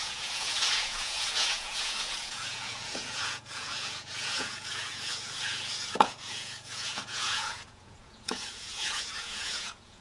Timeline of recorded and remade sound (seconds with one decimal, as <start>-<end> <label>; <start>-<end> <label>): 0.0-10.0 remade